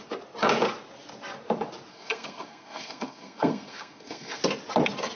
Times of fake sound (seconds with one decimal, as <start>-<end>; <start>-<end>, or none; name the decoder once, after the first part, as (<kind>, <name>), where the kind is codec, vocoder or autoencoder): 1.9-4.4 (codec, SNAC)